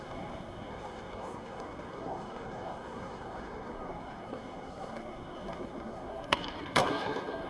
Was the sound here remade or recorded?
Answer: remade